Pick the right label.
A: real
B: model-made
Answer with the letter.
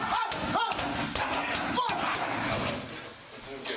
A